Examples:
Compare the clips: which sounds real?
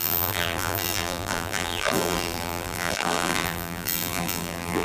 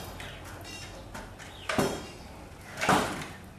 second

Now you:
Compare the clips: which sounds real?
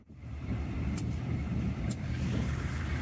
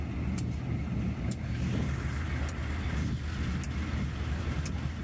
second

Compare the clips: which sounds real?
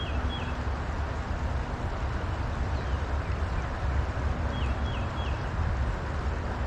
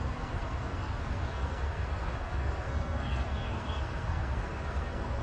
first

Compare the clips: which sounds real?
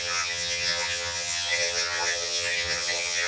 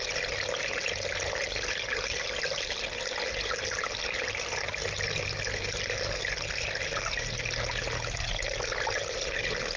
second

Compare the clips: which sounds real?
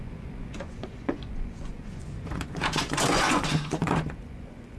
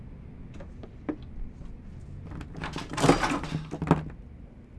second